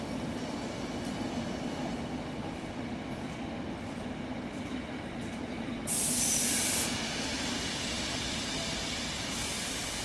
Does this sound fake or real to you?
real